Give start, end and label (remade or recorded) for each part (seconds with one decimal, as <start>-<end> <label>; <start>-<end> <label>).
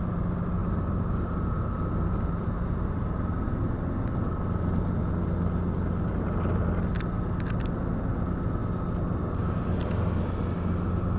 0.0-0.6 recorded; 0.6-4.0 remade; 4.0-11.2 recorded